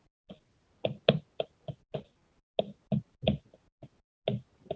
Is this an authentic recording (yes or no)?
yes